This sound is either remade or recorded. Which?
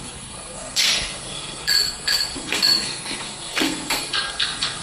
remade